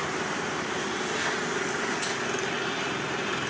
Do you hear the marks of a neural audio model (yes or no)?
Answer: no